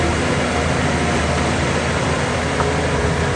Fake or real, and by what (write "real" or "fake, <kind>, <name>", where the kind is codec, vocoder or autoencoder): real